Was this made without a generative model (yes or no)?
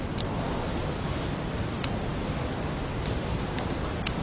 yes